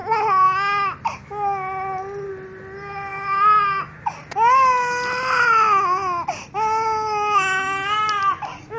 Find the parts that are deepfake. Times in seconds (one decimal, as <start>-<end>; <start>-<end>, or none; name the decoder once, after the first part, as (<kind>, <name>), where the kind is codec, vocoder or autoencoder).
none